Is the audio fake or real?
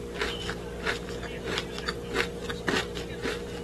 real